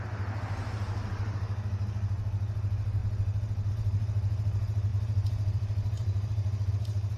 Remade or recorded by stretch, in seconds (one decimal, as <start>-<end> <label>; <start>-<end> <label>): 0.0-4.9 recorded; 4.9-6.7 remade; 6.7-7.2 recorded